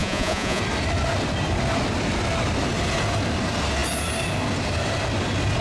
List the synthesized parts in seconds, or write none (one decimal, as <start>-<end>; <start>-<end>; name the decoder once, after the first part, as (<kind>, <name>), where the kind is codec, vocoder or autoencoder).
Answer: 0.0-0.6 (vocoder, Vocos)